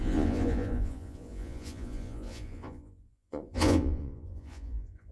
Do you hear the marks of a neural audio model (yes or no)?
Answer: yes